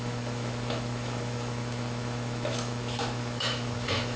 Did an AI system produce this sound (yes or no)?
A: yes